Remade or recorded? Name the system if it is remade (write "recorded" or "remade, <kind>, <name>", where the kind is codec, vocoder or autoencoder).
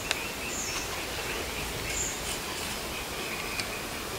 recorded